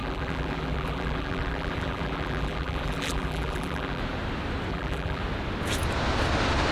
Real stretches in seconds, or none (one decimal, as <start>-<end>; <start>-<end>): 4.0-4.7; 5.2-6.7